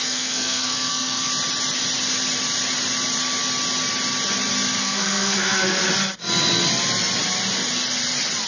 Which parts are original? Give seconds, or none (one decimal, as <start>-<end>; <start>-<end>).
1.3-4.8; 5.8-8.5